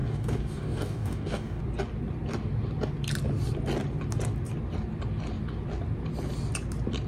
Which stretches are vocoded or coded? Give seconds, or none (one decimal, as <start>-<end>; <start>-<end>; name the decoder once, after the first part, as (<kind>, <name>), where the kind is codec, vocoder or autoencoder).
0.0-1.6 (codec, DAC)